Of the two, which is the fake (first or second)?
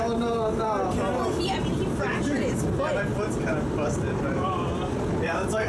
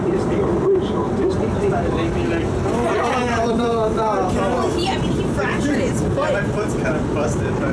second